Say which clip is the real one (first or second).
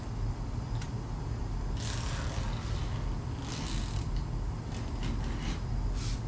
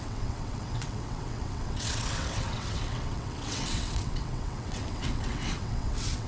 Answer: first